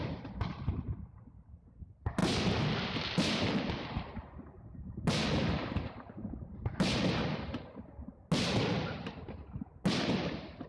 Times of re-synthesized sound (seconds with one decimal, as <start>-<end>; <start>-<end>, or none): none